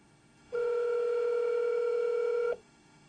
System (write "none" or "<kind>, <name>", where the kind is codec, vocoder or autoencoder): autoencoder, DAC-VAE